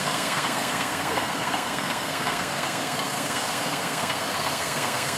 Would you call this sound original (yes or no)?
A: no